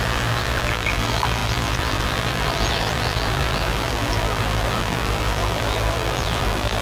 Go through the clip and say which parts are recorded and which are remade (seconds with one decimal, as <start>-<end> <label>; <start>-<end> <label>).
0.0-6.8 remade